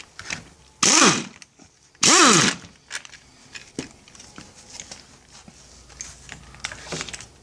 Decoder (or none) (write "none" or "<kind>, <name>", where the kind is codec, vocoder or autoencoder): none